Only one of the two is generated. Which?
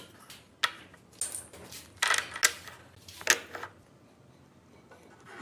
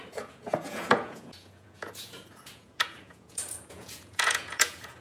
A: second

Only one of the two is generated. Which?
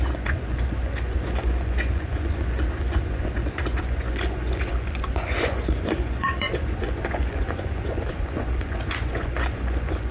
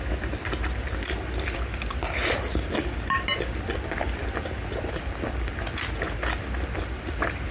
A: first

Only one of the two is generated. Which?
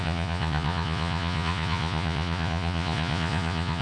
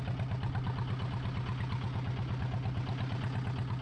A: first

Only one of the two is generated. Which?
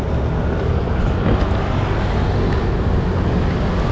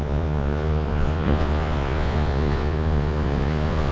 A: second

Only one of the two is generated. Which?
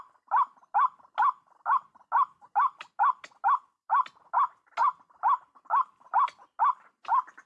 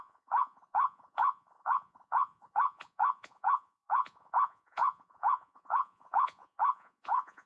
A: second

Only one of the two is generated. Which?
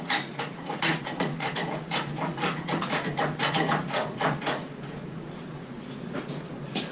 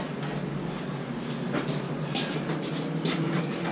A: first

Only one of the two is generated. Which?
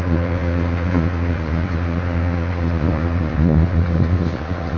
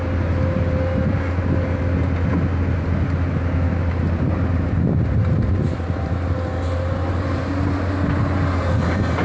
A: first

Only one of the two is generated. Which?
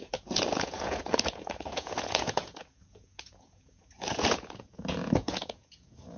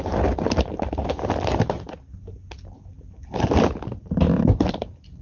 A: first